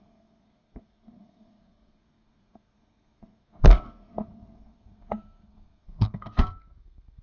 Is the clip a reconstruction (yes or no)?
yes